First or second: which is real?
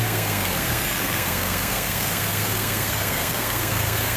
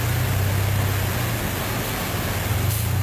second